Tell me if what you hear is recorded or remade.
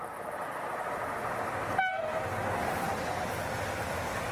recorded